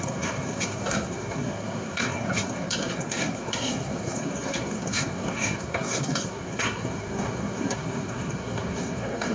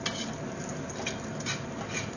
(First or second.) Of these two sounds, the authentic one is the second